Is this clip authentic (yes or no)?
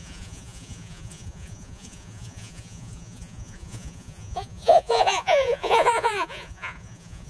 no